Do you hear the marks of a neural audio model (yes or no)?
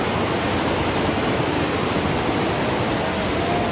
no